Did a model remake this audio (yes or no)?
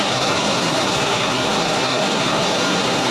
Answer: yes